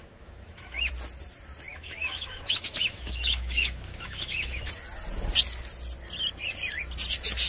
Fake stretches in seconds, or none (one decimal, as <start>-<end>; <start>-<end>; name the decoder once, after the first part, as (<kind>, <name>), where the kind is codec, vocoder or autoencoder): 0.0-0.9 (autoencoder, DAC-VAE); 1.7-4.7